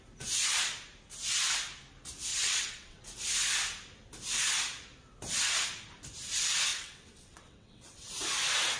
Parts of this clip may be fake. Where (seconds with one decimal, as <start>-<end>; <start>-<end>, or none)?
2.3-3.0; 6.7-8.1